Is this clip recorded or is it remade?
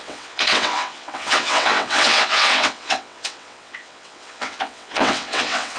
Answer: remade